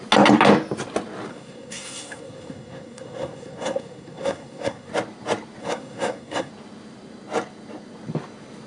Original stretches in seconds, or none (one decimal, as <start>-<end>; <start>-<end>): 0.0-1.3; 4.9-5.6; 6.5-8.7